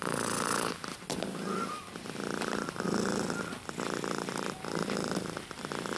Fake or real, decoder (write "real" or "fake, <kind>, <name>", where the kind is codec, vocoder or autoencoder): real